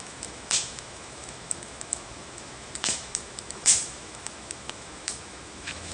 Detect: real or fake fake